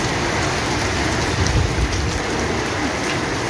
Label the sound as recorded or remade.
recorded